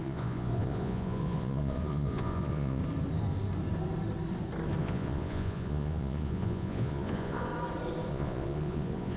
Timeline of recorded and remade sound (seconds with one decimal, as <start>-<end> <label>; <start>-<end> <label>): 0.0-2.8 remade; 2.8-4.8 recorded; 4.8-7.5 remade; 7.5-8.1 recorded; 8.1-9.2 remade